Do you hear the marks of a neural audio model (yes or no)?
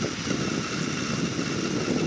no